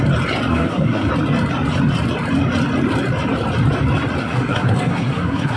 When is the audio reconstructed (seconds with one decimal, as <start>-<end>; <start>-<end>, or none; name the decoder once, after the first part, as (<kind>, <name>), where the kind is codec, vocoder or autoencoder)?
0.5-1.1 (codec, SNAC); 4.2-5.6